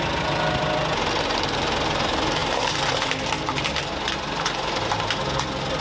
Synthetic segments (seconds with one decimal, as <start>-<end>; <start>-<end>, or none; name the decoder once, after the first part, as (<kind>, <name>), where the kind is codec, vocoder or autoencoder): none